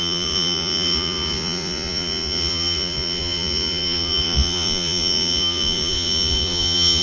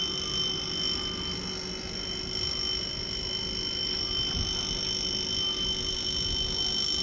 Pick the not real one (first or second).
first